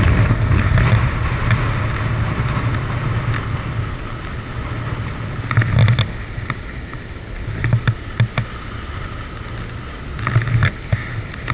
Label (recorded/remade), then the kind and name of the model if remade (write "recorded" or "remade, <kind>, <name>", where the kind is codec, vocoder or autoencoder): recorded